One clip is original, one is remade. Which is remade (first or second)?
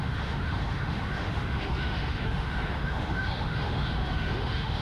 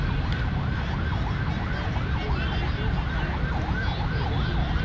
first